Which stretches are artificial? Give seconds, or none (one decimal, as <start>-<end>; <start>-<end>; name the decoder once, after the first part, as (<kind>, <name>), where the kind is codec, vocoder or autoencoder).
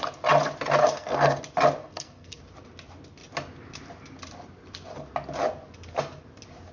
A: 0.8-1.4 (codec, SNAC); 1.8-2.4